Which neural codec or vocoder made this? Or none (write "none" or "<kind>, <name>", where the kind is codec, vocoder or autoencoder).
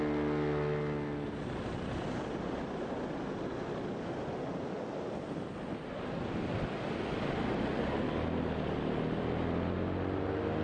none